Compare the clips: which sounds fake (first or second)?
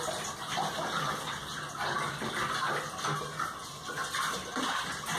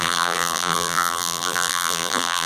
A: second